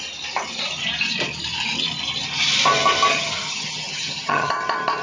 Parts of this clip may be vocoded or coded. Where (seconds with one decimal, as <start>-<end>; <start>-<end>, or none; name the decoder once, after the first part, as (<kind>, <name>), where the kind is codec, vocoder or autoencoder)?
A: 3.1-4.5 (vocoder, HiFi-GAN)